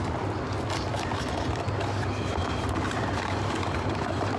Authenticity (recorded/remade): recorded